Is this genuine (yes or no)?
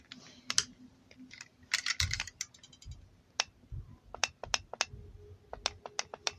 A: yes